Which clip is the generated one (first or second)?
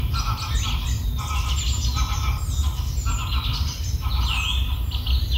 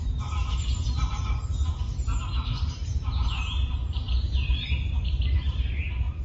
second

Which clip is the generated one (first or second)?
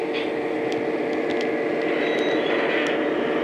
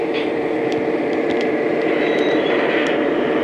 second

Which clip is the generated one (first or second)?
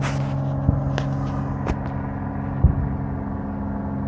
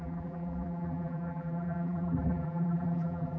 second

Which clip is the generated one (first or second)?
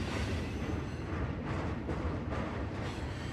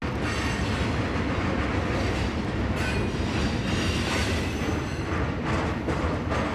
first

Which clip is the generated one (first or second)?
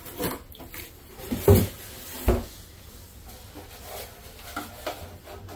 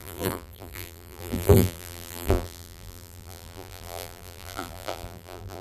second